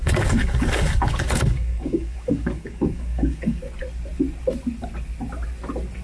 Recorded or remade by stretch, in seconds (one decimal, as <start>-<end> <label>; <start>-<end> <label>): 0.0-3.6 remade; 3.6-6.0 recorded